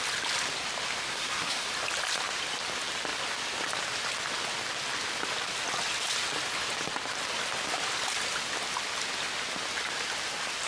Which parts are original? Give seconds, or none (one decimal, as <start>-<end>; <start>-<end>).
0.0-1.1; 1.7-10.7